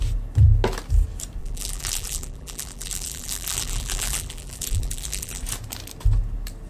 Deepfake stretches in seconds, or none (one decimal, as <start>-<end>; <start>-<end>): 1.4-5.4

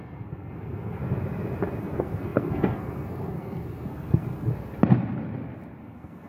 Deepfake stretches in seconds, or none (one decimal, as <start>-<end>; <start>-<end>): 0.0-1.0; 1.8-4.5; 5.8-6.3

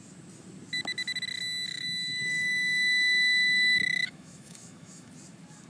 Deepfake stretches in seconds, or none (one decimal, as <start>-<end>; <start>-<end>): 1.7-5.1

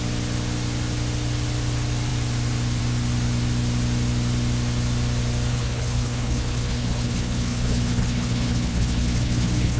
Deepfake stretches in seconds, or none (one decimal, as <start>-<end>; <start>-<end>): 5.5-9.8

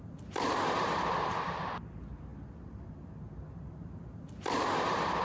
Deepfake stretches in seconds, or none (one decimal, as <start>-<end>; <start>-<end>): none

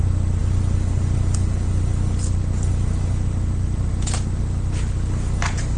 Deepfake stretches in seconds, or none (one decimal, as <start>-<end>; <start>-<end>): none